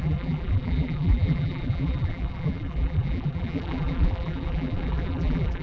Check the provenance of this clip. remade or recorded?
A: remade